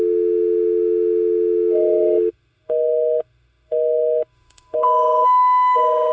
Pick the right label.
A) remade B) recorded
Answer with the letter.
A